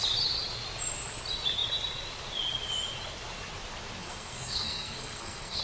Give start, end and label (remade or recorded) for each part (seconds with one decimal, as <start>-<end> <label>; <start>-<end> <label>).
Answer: 0.0-4.0 recorded; 4.0-5.6 remade